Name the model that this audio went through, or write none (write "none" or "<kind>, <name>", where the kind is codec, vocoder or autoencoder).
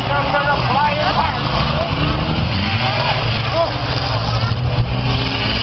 none